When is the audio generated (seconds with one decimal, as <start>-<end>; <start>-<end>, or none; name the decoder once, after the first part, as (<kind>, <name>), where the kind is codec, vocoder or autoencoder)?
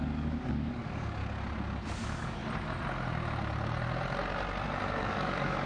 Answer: 0.0-1.2 (codec, DAC); 1.9-2.4; 5.0-5.7